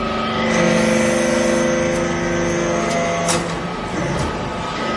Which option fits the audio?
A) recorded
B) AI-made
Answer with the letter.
A